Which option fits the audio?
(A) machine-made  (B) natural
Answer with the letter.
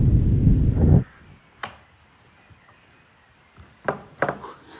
B